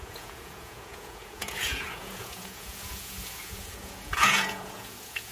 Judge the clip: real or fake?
fake